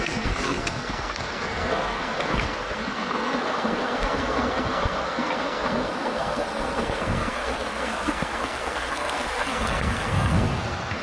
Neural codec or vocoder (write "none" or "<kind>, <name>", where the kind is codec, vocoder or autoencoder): codec, SNAC